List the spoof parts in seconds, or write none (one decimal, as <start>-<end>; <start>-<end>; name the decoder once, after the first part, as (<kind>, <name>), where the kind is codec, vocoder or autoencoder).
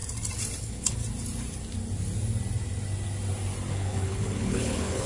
0.6-1.0 (codec, HILCodec); 3.7-5.1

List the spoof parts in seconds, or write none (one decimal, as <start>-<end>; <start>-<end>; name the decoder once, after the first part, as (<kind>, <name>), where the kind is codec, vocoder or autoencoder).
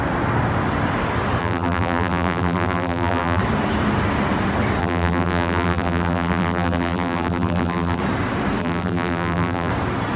1.4-3.4 (vocoder, BigVGAN v2); 4.8-8.0; 8.6-9.7